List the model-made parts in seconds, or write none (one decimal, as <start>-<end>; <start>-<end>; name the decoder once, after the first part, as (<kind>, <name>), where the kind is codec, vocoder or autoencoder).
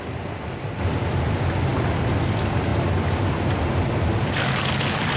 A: none